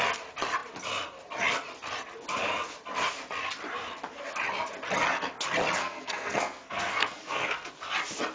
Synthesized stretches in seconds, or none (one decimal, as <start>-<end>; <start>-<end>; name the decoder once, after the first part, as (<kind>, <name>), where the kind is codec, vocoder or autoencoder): 5.8-7.7 (codec, SNAC)